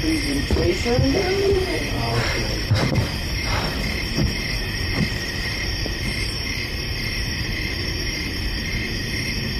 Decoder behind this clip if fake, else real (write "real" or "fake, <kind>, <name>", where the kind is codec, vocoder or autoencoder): fake, vocoder, BigVGAN v2